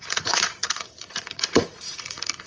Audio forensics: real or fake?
fake